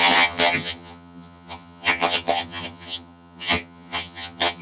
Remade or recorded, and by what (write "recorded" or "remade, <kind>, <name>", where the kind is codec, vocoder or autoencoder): remade, vocoder, HiFi-GAN